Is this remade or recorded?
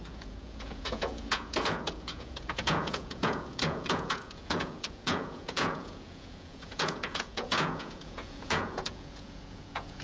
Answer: remade